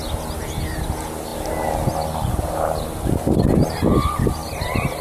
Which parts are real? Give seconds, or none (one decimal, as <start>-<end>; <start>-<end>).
0.0-5.0